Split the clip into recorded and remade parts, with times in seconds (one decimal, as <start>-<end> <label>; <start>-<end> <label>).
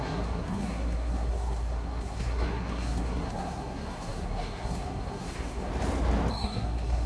0.0-5.7 remade; 5.7-6.3 recorded; 6.3-7.1 remade